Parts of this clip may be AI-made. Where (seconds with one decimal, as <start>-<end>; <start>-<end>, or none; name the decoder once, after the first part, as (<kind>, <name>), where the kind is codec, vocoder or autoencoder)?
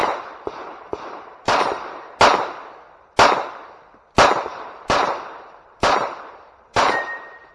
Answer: 0.0-2.2 (vocoder, BigVGAN v2); 4.5-7.5